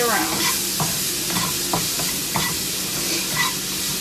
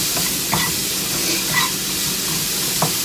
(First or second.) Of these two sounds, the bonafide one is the first